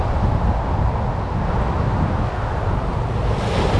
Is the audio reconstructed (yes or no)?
no